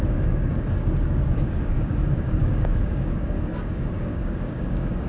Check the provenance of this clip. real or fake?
fake